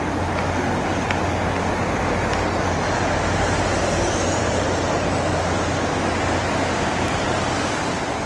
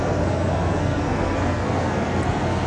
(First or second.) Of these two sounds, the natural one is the first